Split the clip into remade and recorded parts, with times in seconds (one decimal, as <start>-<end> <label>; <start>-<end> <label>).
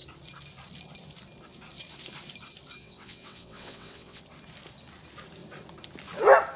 0.0-2.8 recorded; 2.8-4.2 remade; 4.2-6.6 recorded